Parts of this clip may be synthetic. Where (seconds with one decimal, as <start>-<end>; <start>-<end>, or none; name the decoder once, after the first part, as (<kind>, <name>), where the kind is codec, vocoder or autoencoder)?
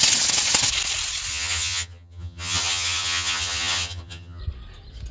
1.3-4.4 (vocoder, HiFi-GAN)